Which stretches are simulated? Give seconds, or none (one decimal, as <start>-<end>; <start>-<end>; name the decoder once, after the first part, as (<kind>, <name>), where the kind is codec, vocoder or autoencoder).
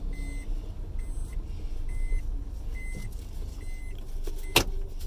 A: none